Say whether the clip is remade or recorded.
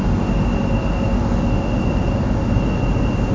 recorded